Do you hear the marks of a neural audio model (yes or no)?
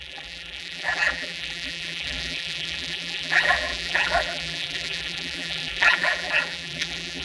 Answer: yes